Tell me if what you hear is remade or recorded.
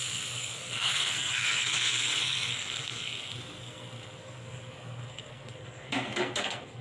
remade